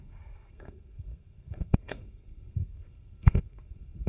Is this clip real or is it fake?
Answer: fake